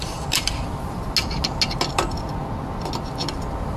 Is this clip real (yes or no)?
yes